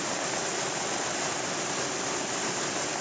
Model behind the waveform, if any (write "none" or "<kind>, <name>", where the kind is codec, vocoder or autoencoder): none